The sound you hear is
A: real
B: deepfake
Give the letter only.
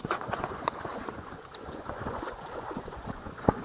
B